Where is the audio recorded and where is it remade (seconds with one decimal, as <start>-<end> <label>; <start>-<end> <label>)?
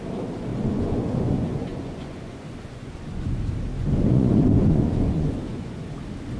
0.0-0.5 recorded; 0.5-3.4 remade; 3.4-3.8 recorded; 3.8-5.9 remade; 5.9-6.4 recorded